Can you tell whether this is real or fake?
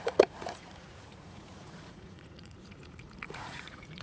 fake